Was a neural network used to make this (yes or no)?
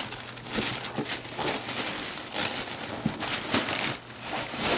no